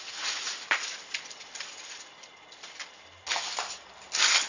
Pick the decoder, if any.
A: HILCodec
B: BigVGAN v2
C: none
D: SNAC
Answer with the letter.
C